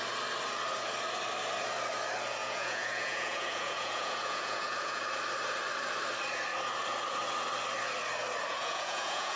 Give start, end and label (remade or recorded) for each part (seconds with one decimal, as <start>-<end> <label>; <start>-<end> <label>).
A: 0.0-2.4 recorded; 2.4-5.0 remade; 5.0-8.5 recorded; 8.5-9.4 remade